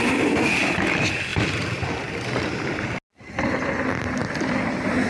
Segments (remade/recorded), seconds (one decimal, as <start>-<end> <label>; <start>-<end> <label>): 0.0-1.3 recorded; 1.3-2.1 remade; 2.1-4.2 recorded; 4.2-5.1 remade

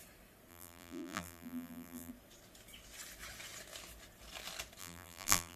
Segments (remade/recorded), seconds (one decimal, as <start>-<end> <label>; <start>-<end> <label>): 0.0-0.5 recorded; 0.5-2.1 remade; 2.1-4.8 recorded; 4.8-5.6 remade

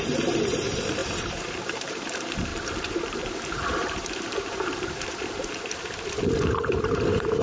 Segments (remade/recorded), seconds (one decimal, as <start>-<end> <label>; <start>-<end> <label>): 0.0-7.4 remade

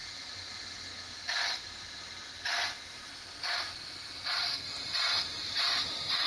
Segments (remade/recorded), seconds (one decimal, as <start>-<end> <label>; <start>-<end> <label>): 0.0-0.5 remade; 0.5-5.4 recorded; 5.4-6.3 remade

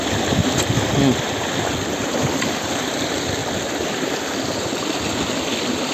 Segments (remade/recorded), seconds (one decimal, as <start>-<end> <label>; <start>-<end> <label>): 0.0-0.4 remade; 0.4-2.1 recorded; 2.1-3.4 remade; 3.4-4.7 recorded; 4.7-5.9 remade

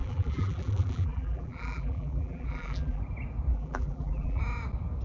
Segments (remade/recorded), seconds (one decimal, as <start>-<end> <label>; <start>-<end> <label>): 0.0-3.0 remade; 3.0-3.5 recorded; 3.5-4.4 remade; 4.4-5.0 recorded

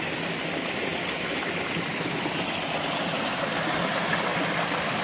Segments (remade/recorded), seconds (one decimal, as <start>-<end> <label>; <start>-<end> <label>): 0.0-4.3 recorded; 4.3-5.0 remade

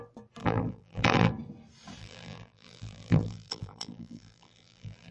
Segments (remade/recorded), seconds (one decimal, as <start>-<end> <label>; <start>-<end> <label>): 0.0-0.4 recorded; 0.4-1.3 remade; 1.3-2.0 recorded; 2.0-5.1 remade